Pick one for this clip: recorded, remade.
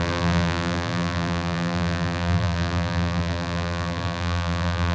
remade